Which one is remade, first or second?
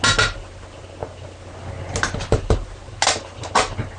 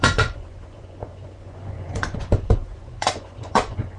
second